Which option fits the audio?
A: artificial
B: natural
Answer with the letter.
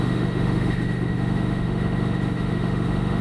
A